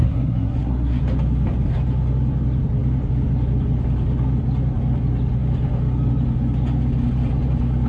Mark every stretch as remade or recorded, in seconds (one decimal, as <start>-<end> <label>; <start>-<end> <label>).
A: 0.0-1.0 remade; 1.0-7.9 recorded